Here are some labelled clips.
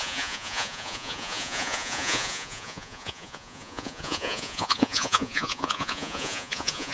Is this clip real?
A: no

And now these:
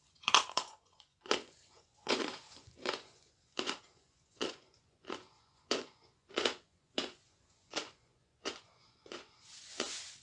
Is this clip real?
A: no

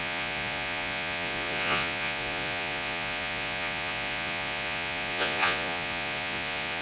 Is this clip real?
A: no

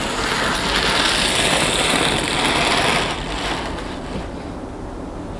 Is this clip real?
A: yes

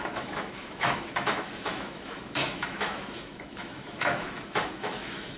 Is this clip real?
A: no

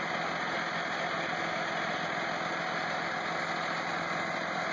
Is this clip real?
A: yes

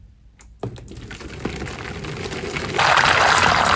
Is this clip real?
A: yes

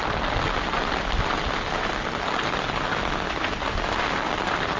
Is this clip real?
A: yes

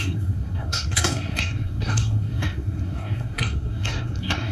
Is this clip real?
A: no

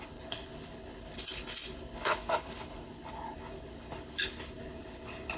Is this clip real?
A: no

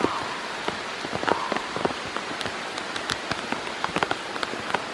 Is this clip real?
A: yes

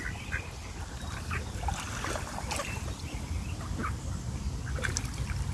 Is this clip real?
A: yes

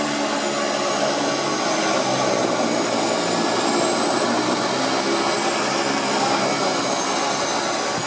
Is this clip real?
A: yes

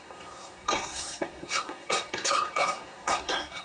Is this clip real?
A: no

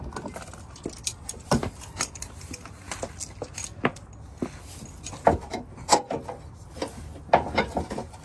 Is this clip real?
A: yes